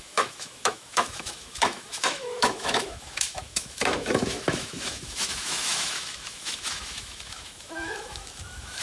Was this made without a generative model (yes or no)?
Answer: no